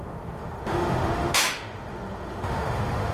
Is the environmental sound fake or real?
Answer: fake